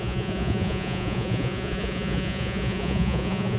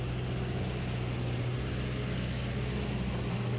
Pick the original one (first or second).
second